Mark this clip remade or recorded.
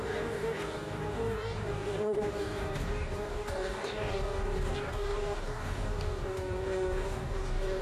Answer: remade